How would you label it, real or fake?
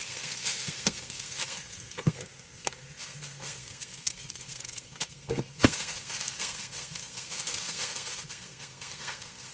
fake